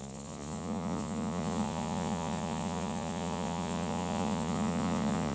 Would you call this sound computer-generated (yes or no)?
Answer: yes